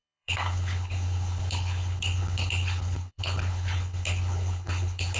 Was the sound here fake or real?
fake